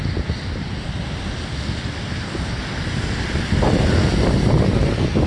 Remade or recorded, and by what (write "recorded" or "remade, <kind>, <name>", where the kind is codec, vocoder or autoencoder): recorded